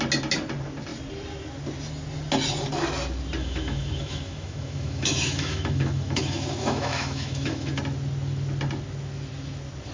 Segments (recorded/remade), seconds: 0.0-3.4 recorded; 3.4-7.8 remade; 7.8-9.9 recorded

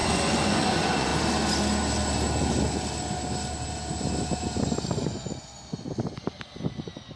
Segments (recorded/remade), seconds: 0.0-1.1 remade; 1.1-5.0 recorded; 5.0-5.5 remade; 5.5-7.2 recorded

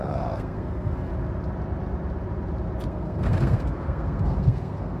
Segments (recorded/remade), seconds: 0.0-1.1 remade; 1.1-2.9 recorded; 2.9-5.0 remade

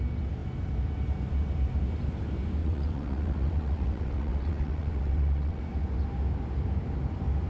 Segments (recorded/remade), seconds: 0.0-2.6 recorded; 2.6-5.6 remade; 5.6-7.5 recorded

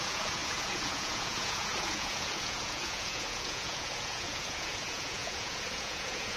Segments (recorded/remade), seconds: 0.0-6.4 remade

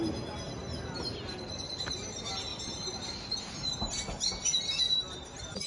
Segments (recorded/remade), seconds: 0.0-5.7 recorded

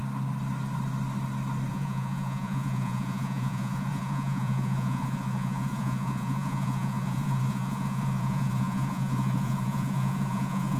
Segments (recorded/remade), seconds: 0.0-1.7 recorded; 1.7-10.8 remade

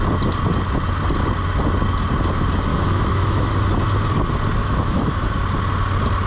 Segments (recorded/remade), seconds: 0.0-2.7 recorded; 2.7-3.5 remade; 3.5-4.6 recorded; 4.6-5.4 remade; 5.4-6.3 recorded